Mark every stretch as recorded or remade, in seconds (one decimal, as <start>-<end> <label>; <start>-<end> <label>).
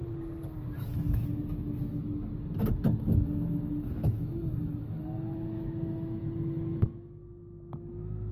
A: 0.0-0.8 recorded; 0.8-8.3 remade